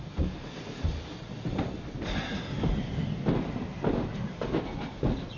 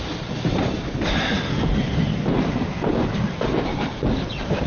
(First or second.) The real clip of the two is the first